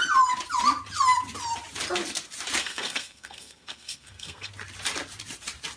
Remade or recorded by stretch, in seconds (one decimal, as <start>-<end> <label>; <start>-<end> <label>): 0.0-2.6 recorded; 2.6-4.5 remade; 4.5-5.8 recorded